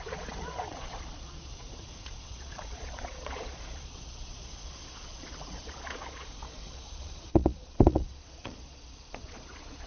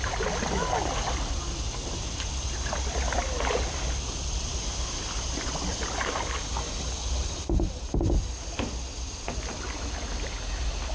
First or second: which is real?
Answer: second